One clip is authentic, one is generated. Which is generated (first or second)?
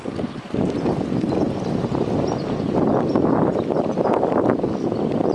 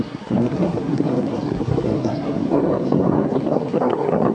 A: second